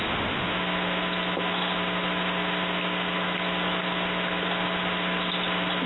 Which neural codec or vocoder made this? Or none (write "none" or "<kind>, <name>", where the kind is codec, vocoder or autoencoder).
none